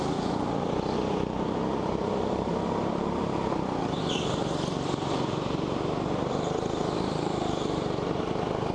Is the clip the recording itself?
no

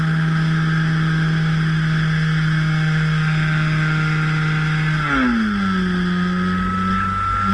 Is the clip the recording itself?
yes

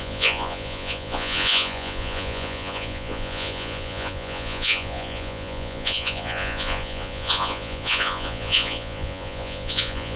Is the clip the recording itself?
no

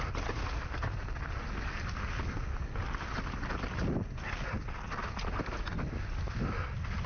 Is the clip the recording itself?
yes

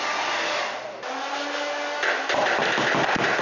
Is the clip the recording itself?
yes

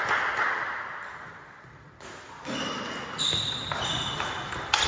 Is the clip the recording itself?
yes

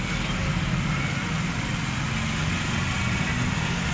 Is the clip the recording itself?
yes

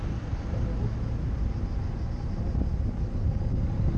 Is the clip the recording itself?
yes